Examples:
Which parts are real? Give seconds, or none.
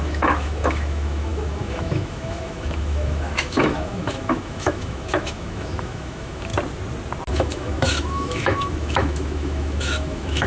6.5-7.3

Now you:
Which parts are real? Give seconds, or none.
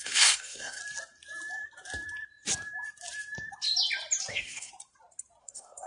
0.8-4.3; 4.7-5.4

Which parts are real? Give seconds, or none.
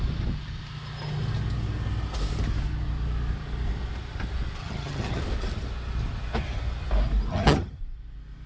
0.0-4.6; 5.2-7.3; 7.8-8.5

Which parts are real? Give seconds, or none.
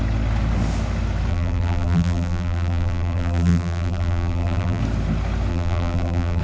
0.0-1.3; 4.8-5.5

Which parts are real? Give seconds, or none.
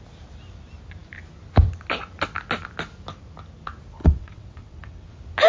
0.0-4.0; 5.1-5.5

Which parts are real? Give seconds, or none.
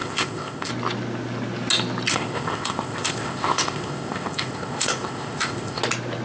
0.7-2.1; 5.8-6.2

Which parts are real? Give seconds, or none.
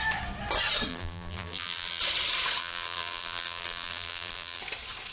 0.0-0.9; 2.0-2.6; 4.6-5.1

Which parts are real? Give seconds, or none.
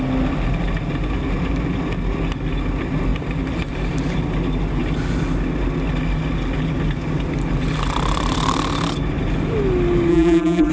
0.0-10.1